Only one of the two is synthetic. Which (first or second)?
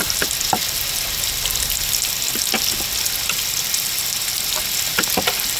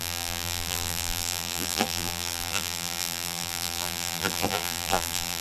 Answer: second